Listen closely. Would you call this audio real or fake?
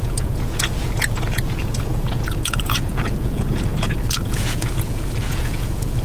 fake